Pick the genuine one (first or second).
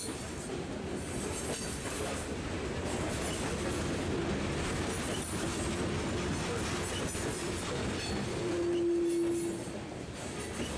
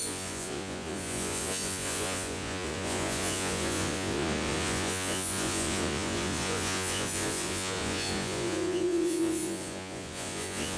first